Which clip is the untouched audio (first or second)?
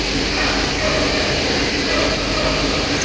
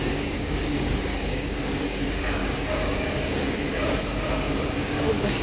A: first